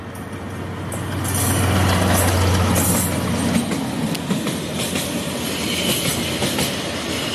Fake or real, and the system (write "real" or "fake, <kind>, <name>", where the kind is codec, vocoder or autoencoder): real